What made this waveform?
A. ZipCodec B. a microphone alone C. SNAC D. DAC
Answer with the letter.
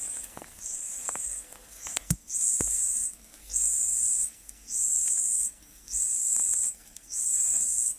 C